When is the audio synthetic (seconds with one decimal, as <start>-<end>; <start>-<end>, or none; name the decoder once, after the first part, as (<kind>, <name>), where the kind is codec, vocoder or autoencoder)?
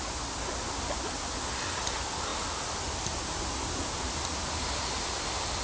none